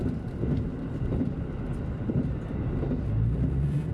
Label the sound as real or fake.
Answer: real